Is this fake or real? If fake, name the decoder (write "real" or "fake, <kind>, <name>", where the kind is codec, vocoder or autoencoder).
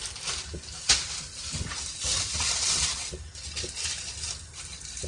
real